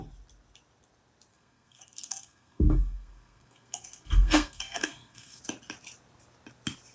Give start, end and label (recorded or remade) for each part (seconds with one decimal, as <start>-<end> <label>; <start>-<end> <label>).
0.0-1.3 recorded; 1.3-5.4 remade; 5.4-6.9 recorded